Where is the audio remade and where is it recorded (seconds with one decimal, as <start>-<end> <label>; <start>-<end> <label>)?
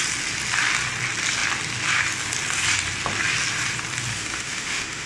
0.0-4.1 recorded; 4.1-5.1 remade